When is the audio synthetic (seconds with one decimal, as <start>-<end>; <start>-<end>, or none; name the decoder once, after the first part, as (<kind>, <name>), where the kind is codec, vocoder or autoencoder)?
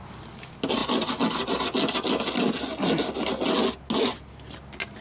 none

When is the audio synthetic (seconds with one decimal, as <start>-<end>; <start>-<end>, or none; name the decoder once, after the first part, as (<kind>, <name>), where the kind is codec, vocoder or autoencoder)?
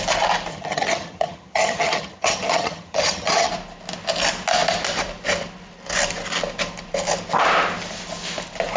0.5-3.5 (vocoder, HiFi-GAN)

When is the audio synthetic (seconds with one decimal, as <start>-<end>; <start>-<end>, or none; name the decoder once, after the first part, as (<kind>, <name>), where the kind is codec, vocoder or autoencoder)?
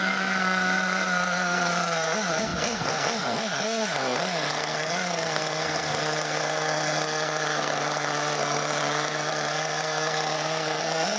0.0-11.2 (codec, SNAC)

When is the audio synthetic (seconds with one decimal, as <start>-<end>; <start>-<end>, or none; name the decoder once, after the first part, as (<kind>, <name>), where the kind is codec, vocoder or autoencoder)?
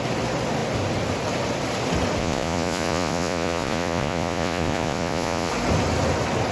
2.2-5.5 (vocoder, Vocos)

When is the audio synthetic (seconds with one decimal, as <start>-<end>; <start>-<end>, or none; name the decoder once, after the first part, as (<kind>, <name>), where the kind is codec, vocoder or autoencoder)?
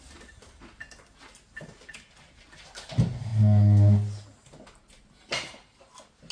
none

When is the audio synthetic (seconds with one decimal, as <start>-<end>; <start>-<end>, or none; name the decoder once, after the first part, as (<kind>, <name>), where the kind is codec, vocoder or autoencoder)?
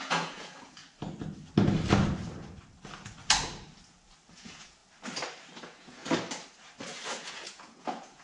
0.0-0.8 (vocoder, Vocos); 4.3-4.8; 5.6-6.0; 7.1-8.2